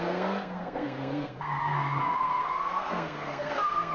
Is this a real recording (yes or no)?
no